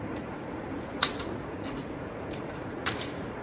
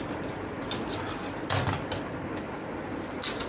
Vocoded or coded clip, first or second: first